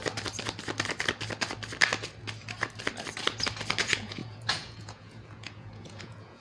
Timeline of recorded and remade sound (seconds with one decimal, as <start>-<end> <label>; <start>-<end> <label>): 0.0-3.8 recorded; 3.8-6.4 remade